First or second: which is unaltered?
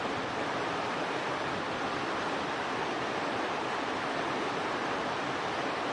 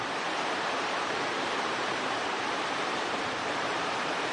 first